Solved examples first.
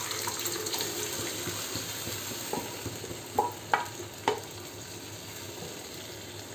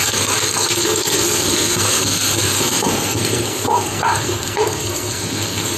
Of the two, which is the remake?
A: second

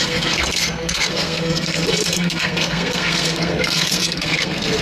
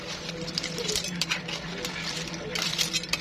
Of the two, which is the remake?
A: first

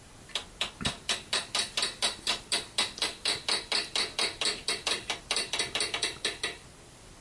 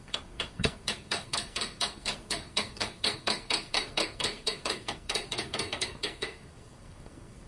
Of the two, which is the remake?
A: second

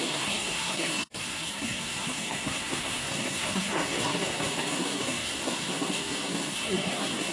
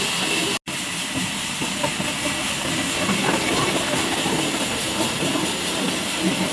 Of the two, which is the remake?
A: first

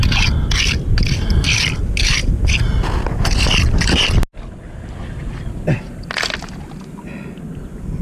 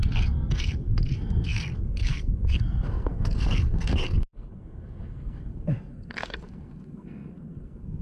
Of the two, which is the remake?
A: second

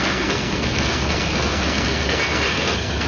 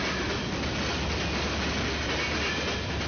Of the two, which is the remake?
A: first